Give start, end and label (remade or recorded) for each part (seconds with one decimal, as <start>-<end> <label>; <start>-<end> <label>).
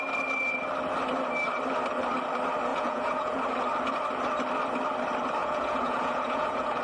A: 0.0-2.7 recorded; 2.7-3.4 remade; 3.4-5.4 recorded; 5.4-6.8 remade